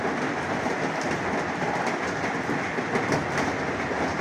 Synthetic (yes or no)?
no